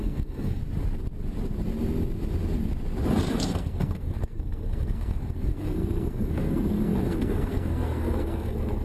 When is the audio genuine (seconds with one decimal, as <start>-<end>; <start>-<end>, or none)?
0.6-3.3